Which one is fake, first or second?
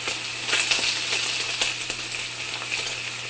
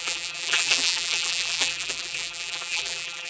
second